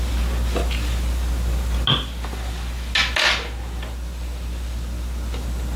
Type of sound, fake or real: real